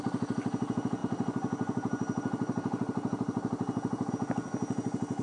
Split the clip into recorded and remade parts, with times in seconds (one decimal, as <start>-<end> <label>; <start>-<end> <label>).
0.0-5.2 recorded